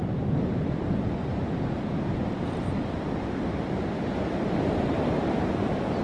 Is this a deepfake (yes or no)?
yes